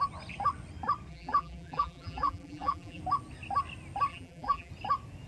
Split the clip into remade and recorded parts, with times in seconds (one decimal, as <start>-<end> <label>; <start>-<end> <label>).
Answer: 0.0-1.1 recorded; 1.1-3.0 remade; 3.0-4.1 recorded; 4.1-4.7 remade; 4.7-5.3 recorded